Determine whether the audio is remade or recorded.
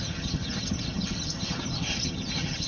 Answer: remade